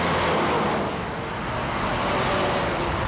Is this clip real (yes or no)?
yes